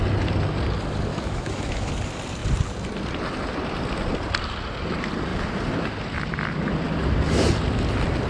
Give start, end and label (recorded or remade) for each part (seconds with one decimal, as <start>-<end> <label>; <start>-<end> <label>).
0.0-1.1 recorded; 1.1-1.9 remade; 1.9-8.3 recorded